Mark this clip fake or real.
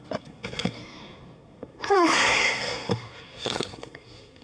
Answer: fake